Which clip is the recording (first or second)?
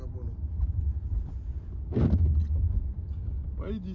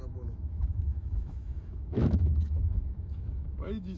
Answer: first